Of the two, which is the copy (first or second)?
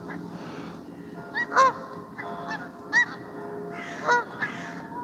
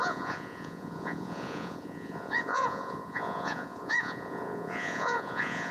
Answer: second